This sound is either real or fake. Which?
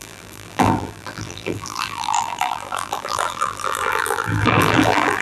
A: fake